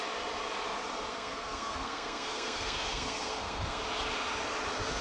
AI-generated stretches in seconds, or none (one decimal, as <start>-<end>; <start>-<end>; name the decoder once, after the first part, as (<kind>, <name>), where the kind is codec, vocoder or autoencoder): 1.1-3.8 (codec, SNAC)